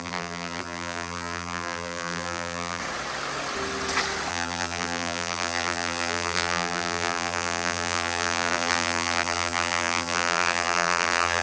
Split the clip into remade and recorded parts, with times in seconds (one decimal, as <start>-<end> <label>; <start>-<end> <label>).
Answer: 0.0-2.8 remade; 2.8-4.3 recorded; 4.3-11.4 remade